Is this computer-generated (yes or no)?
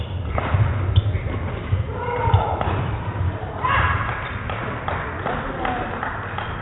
no